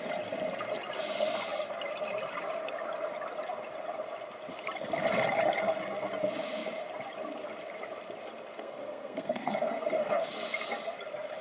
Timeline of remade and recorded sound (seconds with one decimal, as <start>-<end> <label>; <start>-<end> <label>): 0.0-8.5 recorded; 8.5-10.2 remade; 10.2-11.4 recorded